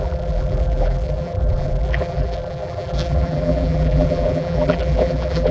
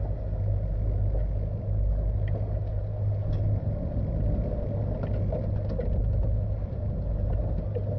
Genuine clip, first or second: second